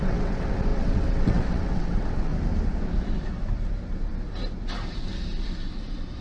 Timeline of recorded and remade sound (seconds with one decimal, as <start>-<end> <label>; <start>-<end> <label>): 0.0-2.3 remade; 2.3-6.2 recorded